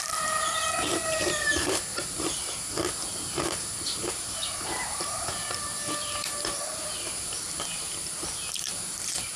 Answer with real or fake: fake